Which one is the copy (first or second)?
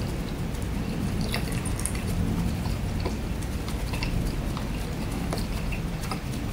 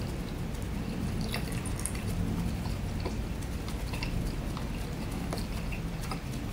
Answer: first